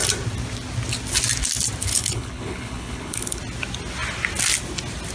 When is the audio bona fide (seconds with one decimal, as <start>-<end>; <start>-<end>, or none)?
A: 0.0-1.9; 3.4-5.1